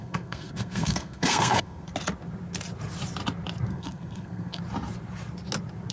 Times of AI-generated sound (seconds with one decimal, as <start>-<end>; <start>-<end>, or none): 0.0-1.9; 3.7-4.6